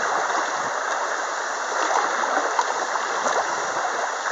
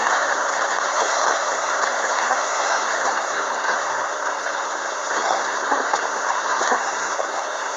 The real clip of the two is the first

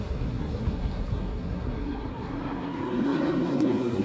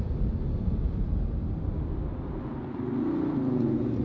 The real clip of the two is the second